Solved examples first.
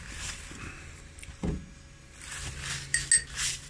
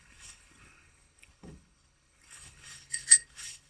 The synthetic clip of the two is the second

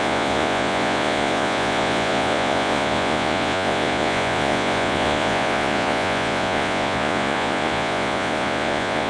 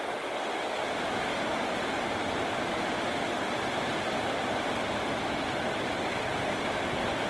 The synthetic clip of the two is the first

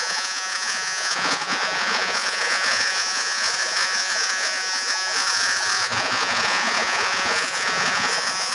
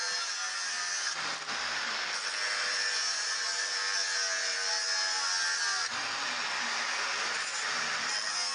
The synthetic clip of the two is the first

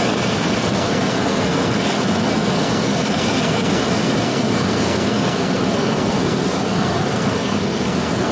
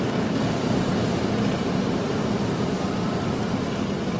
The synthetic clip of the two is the first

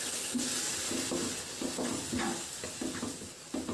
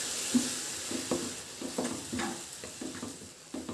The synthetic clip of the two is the second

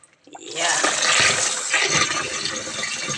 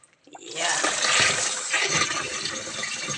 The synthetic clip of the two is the second